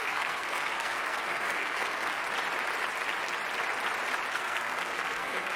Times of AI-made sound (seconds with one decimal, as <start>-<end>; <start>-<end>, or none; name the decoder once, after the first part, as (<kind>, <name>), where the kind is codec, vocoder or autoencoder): 0.0-2.2 (codec, SNAC); 4.3-5.6